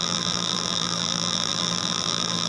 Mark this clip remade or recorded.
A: remade